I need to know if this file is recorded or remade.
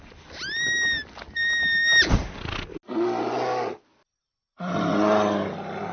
recorded